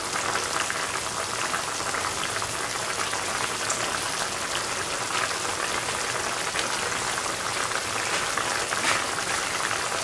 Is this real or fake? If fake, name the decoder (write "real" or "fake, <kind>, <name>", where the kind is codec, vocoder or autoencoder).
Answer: real